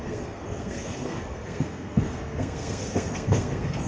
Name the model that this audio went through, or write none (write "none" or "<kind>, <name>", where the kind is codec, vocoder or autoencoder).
codec, SNAC